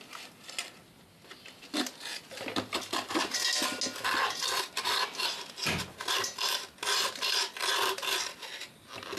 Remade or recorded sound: recorded